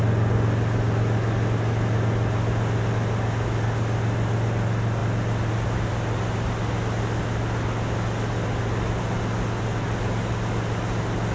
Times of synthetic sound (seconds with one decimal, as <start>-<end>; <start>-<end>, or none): none